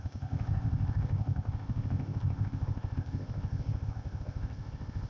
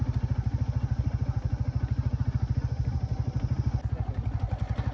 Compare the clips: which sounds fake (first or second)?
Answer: first